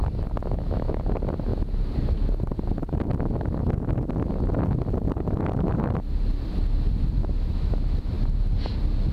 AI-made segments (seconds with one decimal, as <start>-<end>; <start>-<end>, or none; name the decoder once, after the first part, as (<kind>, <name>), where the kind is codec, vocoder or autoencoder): 0.4-1.0 (autoencoder, DAC-VAE); 7.2-8.1